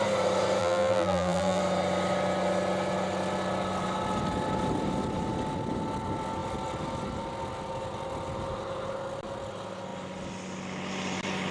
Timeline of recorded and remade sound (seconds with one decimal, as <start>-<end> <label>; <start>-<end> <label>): 0.0-0.6 recorded; 0.6-1.6 remade; 1.6-11.5 recorded